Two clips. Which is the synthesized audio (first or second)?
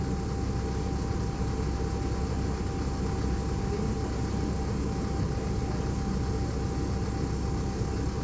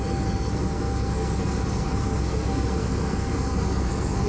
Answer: second